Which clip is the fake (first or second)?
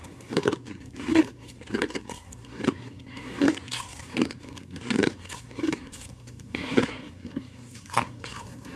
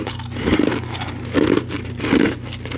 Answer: first